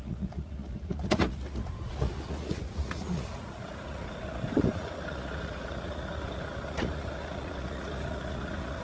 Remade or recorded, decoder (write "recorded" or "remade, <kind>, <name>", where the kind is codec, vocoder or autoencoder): remade, vocoder, Vocos